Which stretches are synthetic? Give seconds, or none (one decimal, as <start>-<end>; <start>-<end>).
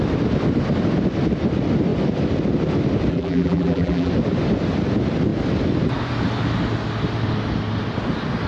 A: 3.1-4.1